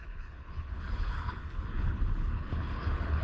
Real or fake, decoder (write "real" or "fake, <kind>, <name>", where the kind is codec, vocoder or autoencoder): fake, codec, HILCodec